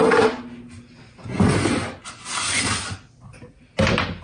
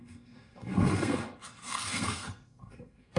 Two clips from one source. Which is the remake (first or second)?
second